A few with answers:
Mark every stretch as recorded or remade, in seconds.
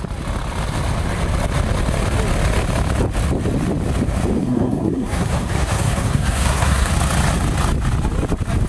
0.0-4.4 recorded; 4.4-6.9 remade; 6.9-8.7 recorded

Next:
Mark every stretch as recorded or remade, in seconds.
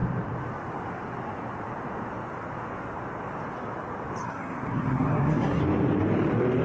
0.0-4.2 recorded; 4.2-5.6 remade; 5.6-6.6 recorded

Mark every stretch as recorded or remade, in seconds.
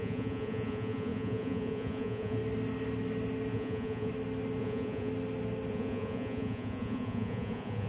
0.0-2.4 remade; 2.4-3.5 recorded; 3.5-4.1 remade; 4.1-4.6 recorded; 4.6-5.1 remade; 5.1-5.7 recorded; 5.7-7.9 remade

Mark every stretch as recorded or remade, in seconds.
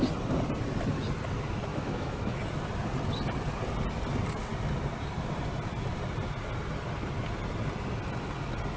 0.0-1.7 recorded; 1.7-2.4 remade; 2.4-8.8 recorded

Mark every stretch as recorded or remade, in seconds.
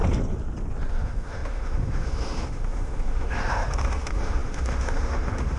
0.0-0.9 recorded; 0.9-5.6 remade